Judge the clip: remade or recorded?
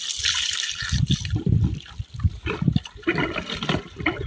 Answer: recorded